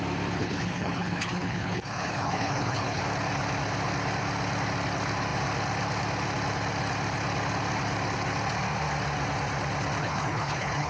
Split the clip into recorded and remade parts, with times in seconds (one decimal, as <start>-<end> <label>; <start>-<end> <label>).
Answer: 0.0-0.4 recorded; 0.4-3.0 remade; 3.0-10.0 recorded; 10.0-10.9 remade